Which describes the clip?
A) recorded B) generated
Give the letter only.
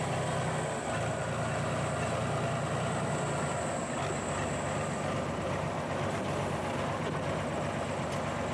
A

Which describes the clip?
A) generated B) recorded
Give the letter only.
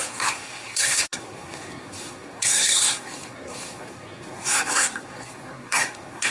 A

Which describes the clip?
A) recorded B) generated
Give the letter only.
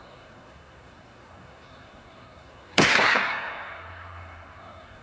B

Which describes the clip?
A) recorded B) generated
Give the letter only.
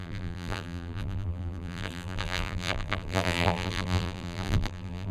B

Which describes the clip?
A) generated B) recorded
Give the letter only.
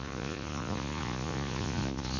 A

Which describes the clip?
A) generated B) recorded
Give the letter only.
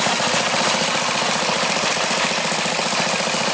B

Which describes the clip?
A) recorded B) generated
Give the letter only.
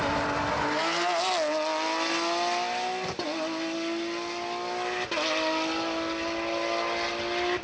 A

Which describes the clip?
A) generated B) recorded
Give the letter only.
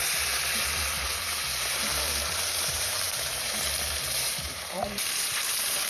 A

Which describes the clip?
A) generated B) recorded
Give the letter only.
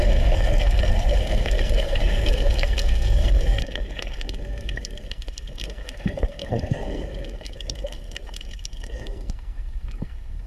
A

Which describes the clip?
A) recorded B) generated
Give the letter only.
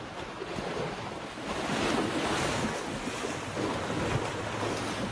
A